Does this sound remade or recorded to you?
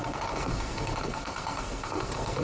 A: remade